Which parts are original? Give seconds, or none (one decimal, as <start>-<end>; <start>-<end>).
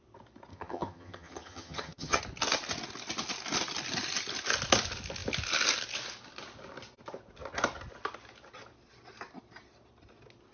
0.0-0.5; 2.2-10.5